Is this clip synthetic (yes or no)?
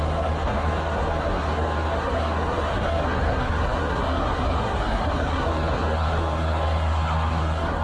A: yes